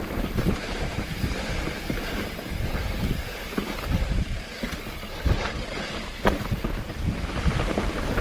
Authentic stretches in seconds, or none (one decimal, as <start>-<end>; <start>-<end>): 4.5-5.6